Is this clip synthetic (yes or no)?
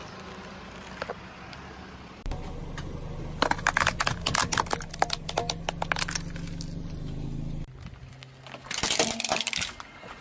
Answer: no